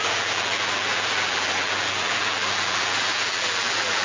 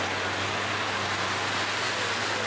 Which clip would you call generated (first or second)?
first